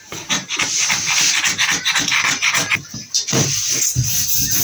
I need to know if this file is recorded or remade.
recorded